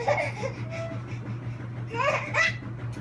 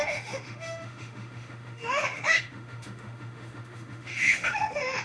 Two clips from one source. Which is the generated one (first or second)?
second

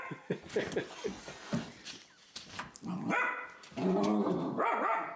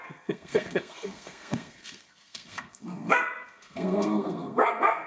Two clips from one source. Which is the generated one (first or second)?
second